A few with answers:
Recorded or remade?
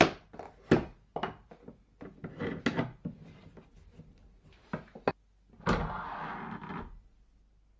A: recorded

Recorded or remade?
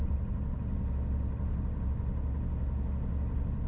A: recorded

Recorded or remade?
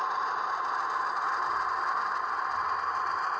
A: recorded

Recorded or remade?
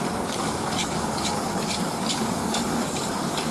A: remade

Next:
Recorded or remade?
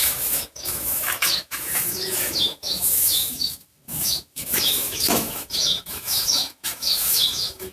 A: remade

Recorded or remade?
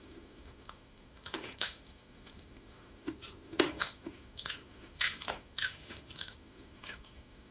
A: remade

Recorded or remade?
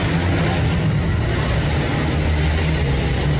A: recorded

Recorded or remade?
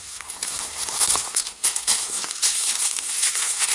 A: remade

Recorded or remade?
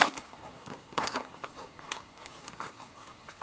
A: remade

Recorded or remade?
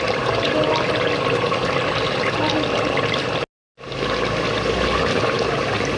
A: recorded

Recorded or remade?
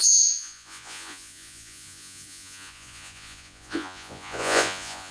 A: remade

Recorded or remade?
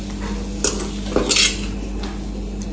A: recorded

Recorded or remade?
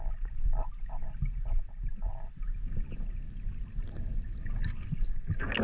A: recorded